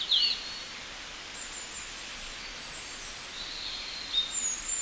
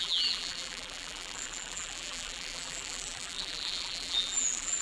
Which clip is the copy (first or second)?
second